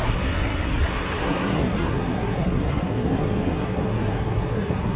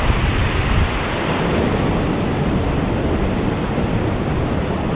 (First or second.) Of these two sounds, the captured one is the second